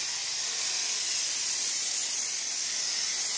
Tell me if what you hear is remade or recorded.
recorded